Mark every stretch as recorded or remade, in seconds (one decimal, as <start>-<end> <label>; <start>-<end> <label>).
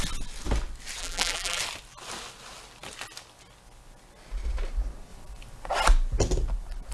0.0-1.0 recorded; 1.0-1.6 remade; 1.6-6.9 recorded